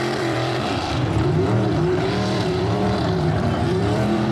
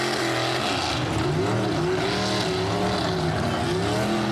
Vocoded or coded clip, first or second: first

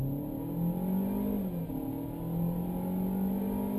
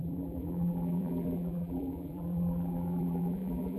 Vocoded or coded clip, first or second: second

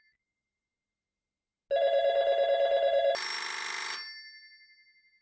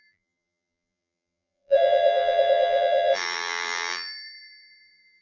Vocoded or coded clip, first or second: second